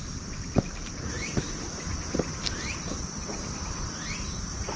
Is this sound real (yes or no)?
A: yes